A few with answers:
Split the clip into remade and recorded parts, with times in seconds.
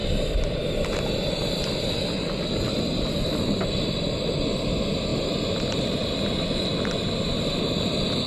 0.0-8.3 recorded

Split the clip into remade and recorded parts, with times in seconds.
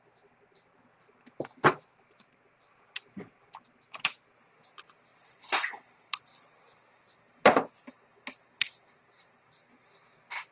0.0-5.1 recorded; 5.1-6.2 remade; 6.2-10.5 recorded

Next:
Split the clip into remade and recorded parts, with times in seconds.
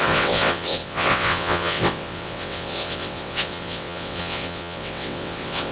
0.0-5.7 remade